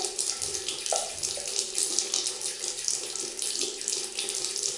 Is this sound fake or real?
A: real